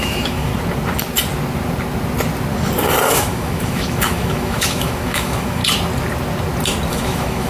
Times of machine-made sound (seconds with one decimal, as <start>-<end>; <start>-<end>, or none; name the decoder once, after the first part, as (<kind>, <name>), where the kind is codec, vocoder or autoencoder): 0.0-0.5 (autoencoder, DAC-VAE); 3.1-5.6; 6.9-7.5